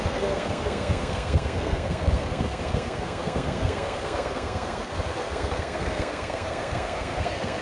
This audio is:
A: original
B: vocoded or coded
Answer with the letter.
B